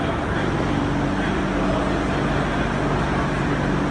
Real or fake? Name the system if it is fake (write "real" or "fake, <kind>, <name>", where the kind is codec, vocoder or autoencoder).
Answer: real